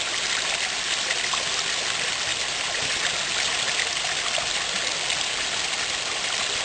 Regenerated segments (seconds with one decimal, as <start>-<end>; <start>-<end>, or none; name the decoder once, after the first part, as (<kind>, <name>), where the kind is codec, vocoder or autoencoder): none